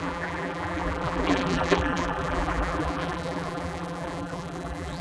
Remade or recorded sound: remade